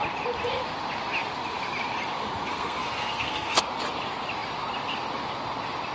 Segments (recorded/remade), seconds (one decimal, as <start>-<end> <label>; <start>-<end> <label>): 0.0-2.5 recorded; 2.5-3.6 remade; 3.6-5.9 recorded